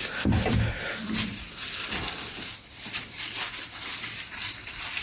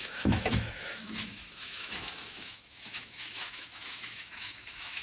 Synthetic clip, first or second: second